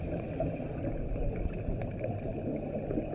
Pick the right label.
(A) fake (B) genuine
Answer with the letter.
B